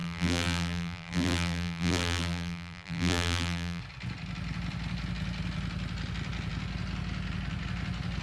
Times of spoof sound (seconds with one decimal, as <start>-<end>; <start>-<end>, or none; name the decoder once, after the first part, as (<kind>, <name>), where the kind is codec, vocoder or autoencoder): 0.0-3.8 (vocoder, BigVGAN v2)